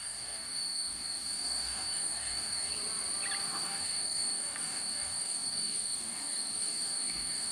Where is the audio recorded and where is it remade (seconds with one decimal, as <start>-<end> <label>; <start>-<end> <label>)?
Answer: 0.0-2.7 remade; 2.7-3.4 recorded; 3.4-7.5 remade